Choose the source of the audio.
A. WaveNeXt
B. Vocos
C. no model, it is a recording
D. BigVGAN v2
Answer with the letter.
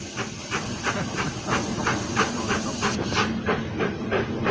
C